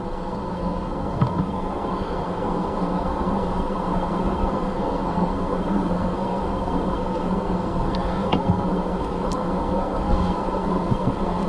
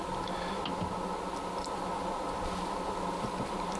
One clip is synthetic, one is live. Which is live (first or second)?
second